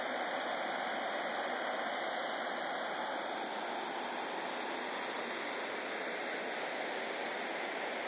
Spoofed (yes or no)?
yes